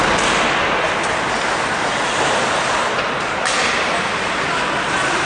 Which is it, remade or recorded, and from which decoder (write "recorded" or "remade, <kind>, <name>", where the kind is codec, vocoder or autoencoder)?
recorded